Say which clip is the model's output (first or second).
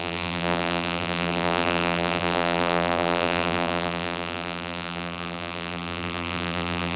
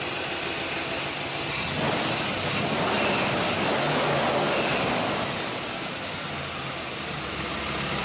first